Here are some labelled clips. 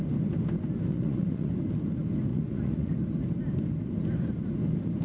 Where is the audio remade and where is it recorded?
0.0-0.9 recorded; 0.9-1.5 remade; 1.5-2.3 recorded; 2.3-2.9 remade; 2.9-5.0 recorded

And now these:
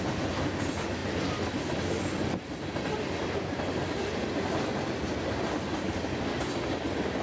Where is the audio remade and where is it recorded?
0.0-7.2 recorded

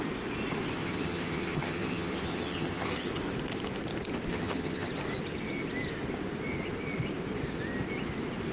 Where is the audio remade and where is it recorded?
0.0-0.8 recorded; 0.8-3.1 remade; 3.1-4.3 recorded; 4.3-4.9 remade; 4.9-8.5 recorded

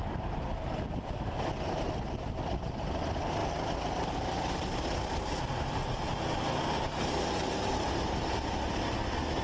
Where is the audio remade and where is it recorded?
0.0-9.4 recorded

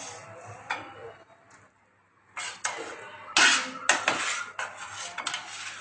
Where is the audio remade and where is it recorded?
0.0-5.8 recorded